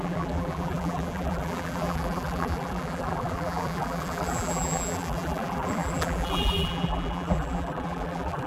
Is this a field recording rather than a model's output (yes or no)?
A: no